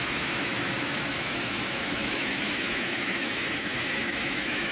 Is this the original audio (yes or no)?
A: no